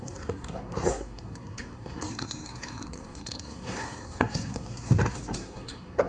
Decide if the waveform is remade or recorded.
remade